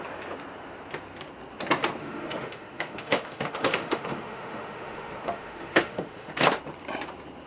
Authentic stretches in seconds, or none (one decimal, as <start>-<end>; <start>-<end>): 0.0-2.0; 6.3-7.5